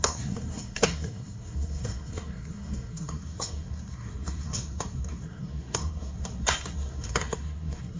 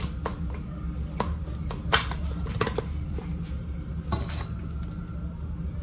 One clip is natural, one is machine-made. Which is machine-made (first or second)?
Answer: first